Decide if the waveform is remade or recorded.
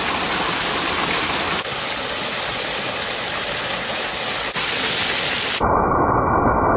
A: recorded